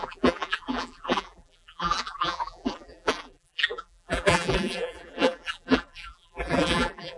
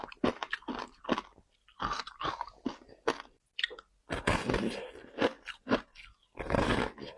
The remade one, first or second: first